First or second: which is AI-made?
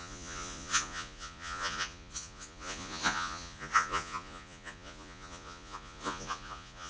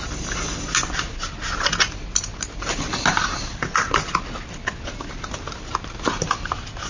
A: first